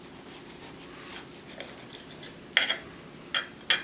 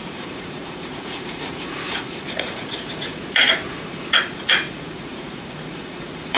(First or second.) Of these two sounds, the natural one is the first